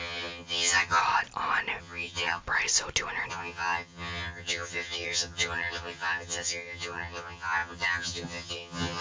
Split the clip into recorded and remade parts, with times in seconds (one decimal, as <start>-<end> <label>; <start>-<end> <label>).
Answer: 0.0-1.0 remade; 1.0-1.8 recorded; 1.8-2.4 remade; 2.4-3.3 recorded; 3.3-9.0 remade